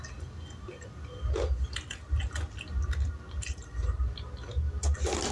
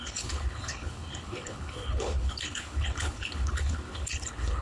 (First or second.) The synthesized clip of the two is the second